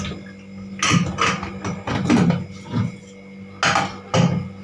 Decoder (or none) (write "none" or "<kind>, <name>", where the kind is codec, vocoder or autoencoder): none